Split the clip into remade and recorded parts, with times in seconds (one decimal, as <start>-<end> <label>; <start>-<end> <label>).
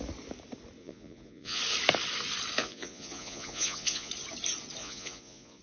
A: 0.0-0.8 recorded; 0.8-1.6 remade; 1.6-2.6 recorded; 2.6-4.1 remade; 4.1-4.8 recorded; 4.8-5.6 remade